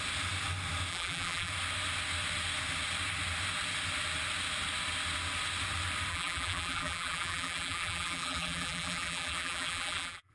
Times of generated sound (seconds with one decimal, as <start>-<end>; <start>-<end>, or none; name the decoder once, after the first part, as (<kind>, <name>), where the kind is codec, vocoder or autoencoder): 0.9-1.5 (vocoder, BigVGAN v2); 6.1-10.3